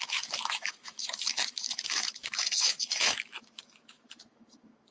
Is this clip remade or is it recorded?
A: remade